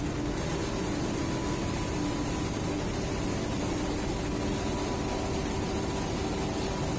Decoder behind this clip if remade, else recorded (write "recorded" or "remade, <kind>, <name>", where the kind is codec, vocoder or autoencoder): recorded